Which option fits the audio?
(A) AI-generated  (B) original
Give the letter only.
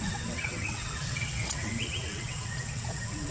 A